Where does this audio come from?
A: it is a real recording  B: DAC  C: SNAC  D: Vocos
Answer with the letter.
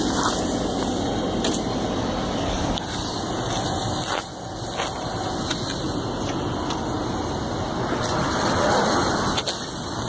A